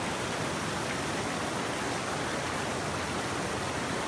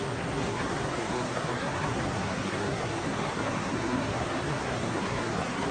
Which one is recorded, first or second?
first